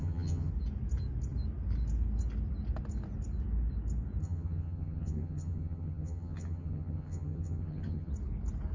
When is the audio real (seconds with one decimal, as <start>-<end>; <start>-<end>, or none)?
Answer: 0.5-4.2; 8.1-8.7